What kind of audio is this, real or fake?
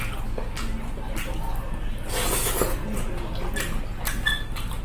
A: real